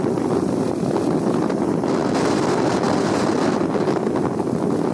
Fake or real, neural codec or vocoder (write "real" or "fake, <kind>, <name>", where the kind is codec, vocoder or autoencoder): real